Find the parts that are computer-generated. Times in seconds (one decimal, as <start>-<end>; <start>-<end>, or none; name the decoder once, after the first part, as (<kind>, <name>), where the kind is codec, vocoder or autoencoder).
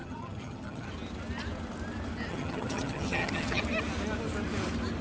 0.0-0.9 (vocoder, HiFi-GAN); 2.3-3.6